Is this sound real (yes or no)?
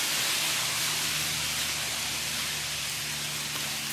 yes